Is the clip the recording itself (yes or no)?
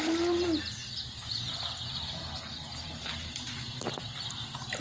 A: yes